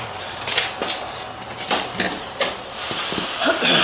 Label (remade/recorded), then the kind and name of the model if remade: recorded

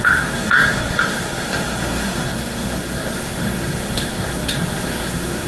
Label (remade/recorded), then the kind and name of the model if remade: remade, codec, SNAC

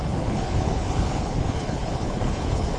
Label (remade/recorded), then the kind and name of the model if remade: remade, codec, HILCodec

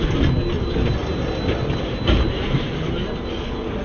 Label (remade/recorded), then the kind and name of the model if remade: recorded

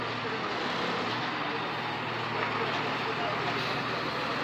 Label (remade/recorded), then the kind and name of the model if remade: recorded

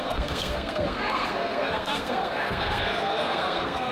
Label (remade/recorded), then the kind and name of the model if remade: remade, codec, SNAC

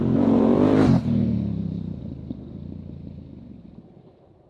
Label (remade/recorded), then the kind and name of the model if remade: remade, vocoder, BigVGAN v2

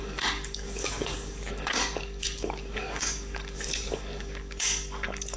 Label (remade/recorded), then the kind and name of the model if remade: remade, codec, DAC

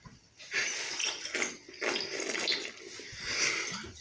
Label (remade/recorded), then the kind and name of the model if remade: recorded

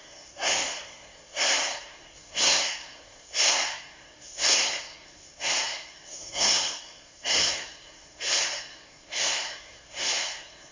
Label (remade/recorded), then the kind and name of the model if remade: remade, codec, SNAC